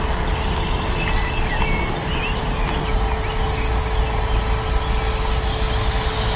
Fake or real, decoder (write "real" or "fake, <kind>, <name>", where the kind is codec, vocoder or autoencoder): real